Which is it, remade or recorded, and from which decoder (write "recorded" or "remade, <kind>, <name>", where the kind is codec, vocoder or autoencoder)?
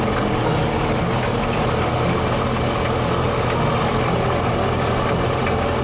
recorded